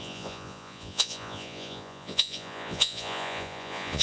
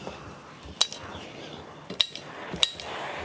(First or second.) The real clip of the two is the second